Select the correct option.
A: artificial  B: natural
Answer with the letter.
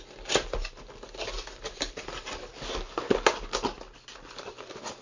B